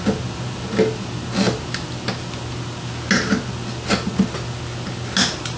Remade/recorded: recorded